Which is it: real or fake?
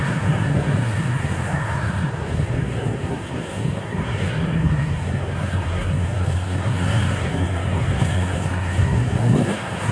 fake